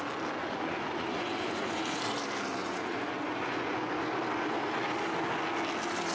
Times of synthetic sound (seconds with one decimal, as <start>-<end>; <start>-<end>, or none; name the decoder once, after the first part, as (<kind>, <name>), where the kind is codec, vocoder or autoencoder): 0.4-2.0 (vocoder, Vocos); 2.6-3.9